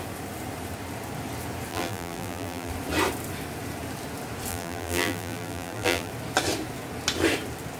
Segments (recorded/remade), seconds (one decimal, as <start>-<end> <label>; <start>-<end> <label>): 0.0-1.7 recorded; 1.7-2.7 remade; 2.7-4.5 recorded; 4.5-6.1 remade; 6.1-7.8 recorded

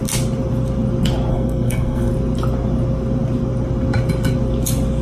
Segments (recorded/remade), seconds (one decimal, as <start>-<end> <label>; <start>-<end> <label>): 0.0-1.3 recorded; 1.3-2.1 remade; 2.1-5.0 recorded

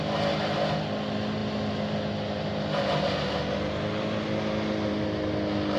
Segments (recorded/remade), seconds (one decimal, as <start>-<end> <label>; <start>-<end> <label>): 0.0-5.8 recorded

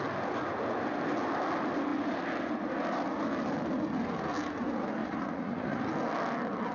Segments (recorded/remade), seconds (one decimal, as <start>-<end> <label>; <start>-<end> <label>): 0.0-5.0 recorded; 5.0-5.8 remade; 5.8-6.7 recorded